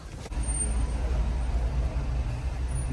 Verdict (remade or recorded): recorded